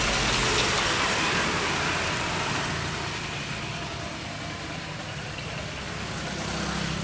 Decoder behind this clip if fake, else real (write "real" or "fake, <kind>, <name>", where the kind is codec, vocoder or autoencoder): real